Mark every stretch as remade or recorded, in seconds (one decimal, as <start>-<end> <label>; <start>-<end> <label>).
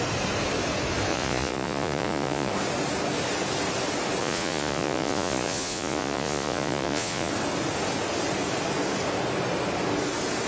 0.0-1.1 recorded; 1.1-2.5 remade; 2.5-4.2 recorded; 4.2-7.3 remade; 7.3-10.5 recorded